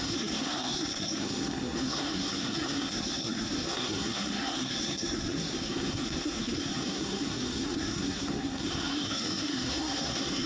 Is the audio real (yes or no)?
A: no